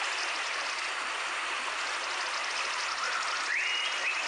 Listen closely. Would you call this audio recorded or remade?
recorded